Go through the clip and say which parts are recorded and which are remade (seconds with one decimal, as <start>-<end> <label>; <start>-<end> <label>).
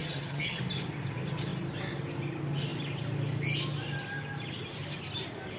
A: 0.0-0.6 remade; 0.6-5.6 recorded